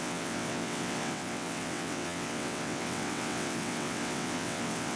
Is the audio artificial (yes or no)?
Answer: yes